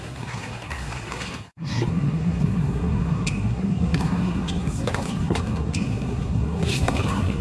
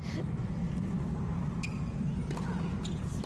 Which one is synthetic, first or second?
first